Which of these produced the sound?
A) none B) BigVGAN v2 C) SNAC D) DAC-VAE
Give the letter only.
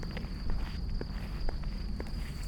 A